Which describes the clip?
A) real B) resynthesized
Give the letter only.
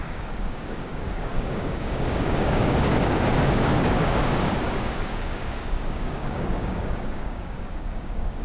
B